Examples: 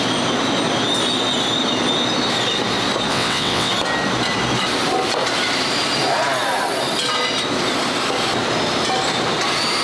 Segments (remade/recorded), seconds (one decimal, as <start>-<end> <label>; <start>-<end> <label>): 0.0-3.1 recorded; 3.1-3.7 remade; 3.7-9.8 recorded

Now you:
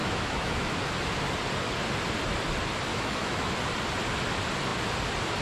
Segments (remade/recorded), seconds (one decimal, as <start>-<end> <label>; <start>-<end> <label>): 0.0-0.9 remade; 0.9-2.9 recorded; 2.9-3.5 remade; 3.5-5.4 recorded

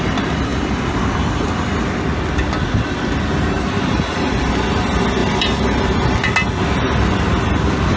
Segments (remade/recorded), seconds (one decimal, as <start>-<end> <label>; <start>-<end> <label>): 0.0-5.2 recorded; 5.2-5.8 remade; 5.8-8.0 recorded